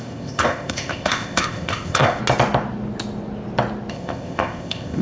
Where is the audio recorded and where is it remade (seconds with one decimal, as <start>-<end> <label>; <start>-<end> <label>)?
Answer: 0.0-2.2 remade; 2.2-3.9 recorded; 3.9-5.0 remade